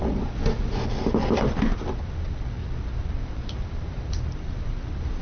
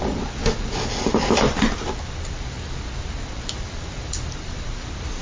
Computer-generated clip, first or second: second